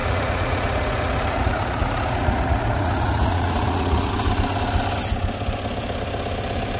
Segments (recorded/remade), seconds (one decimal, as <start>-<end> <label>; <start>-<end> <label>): 0.0-4.1 remade; 4.1-6.8 recorded